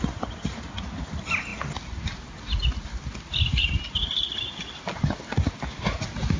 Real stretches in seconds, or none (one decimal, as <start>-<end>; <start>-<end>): 0.0-6.4